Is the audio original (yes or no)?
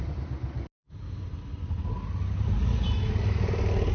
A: yes